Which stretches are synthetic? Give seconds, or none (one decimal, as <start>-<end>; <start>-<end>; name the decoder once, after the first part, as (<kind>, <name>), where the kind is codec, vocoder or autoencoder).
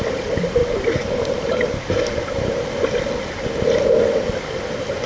0.6-2.3 (vocoder, BigVGAN v2)